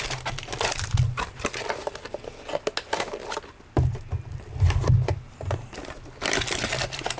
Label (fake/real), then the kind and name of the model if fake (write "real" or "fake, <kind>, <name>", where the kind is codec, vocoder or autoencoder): real